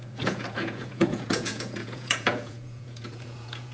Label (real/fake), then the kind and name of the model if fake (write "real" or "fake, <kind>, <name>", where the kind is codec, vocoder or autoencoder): fake, vocoder, Vocos